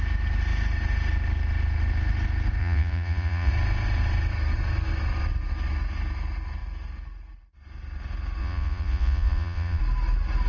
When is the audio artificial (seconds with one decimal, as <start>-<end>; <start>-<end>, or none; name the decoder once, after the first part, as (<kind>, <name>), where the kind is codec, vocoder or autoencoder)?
2.6-3.5 (vocoder, Vocos); 8.4-9.8